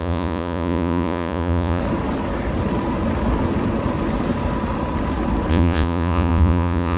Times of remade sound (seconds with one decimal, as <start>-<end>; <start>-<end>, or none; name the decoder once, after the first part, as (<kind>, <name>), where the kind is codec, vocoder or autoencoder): 0.0-1.8 (vocoder, Vocos); 5.5-7.0